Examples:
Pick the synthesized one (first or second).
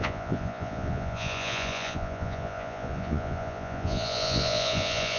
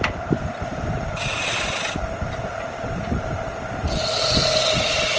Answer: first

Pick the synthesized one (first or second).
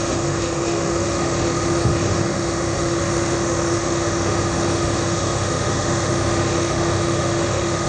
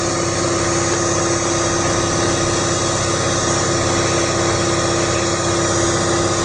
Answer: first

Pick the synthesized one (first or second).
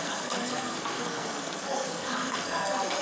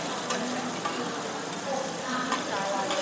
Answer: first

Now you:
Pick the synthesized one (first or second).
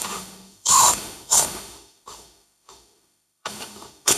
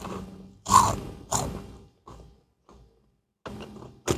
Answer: first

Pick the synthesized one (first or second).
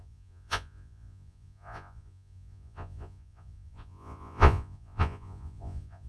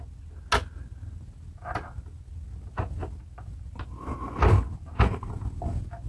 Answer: first